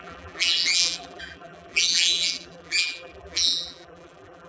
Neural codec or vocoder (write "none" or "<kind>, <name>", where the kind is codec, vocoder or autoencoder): vocoder, BigVGAN v2